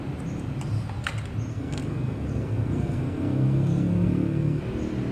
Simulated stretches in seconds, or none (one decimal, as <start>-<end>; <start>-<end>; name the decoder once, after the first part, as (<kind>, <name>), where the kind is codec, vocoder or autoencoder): 1.5-4.6 (codec, SNAC)